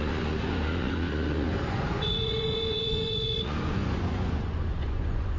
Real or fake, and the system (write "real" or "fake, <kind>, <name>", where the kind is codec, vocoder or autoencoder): fake, vocoder, Vocos